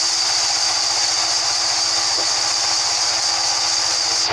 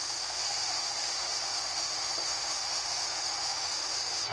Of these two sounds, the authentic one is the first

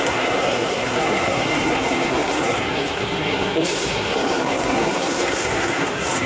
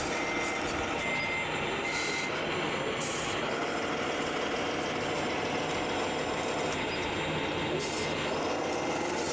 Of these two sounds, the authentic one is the second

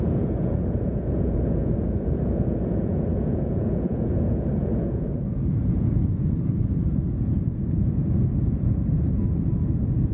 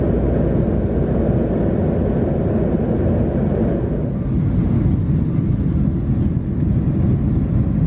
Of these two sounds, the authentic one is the second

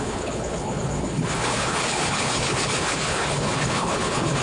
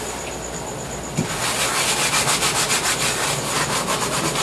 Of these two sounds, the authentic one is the second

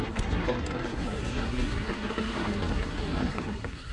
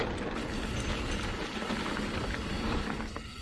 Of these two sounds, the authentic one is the second